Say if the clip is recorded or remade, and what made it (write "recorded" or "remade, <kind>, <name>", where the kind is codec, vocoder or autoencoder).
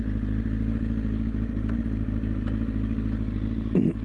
recorded